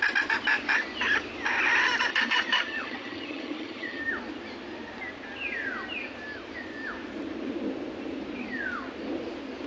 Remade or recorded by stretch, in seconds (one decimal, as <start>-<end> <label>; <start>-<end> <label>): 0.0-2.1 recorded; 2.1-4.0 remade; 4.0-9.7 recorded